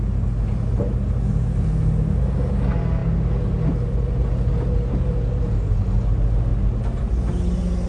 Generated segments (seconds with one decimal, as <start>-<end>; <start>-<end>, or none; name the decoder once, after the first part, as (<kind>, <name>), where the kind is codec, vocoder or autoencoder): none